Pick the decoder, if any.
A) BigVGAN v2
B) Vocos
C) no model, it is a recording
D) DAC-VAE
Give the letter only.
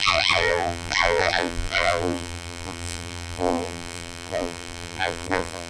A